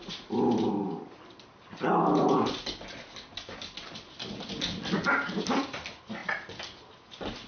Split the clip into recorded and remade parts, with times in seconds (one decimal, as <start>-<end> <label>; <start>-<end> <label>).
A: 0.0-7.5 recorded